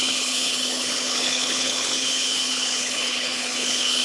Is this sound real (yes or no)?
no